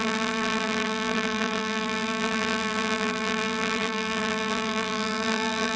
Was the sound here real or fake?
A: fake